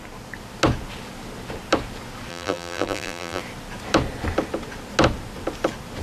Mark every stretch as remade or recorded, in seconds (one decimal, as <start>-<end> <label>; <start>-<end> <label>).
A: 0.0-2.3 recorded; 2.3-3.4 remade; 3.4-6.0 recorded